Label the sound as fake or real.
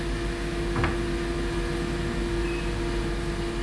real